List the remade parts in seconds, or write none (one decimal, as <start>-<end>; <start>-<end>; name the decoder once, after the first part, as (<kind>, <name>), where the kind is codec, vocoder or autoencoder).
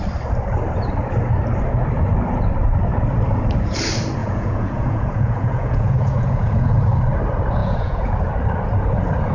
4.2-6.8 (vocoder, Vocos); 7.6-8.3